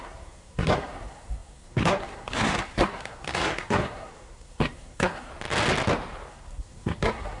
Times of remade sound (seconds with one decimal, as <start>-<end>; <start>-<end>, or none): 0.0-5.3; 6.3-7.4